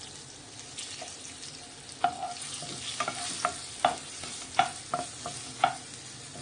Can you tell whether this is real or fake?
real